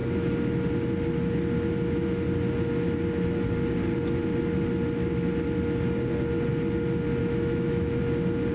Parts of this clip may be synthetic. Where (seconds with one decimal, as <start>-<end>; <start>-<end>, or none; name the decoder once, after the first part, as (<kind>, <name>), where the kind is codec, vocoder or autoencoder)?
7.2-8.0 (autoencoder, DAC-VAE)